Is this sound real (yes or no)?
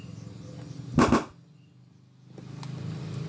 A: yes